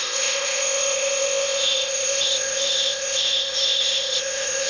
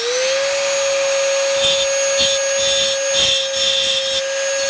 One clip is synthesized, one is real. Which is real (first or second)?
second